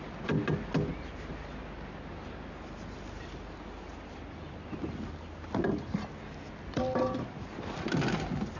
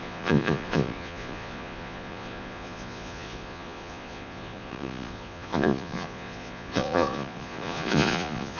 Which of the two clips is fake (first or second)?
second